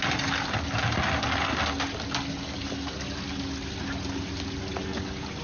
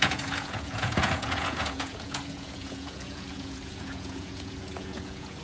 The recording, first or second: first